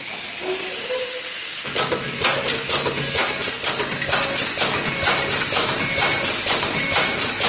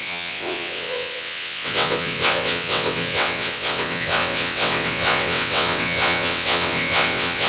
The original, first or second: first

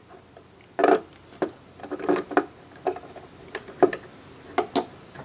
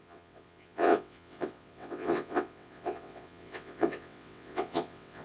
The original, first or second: first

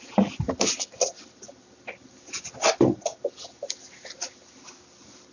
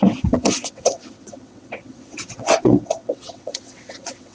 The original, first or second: first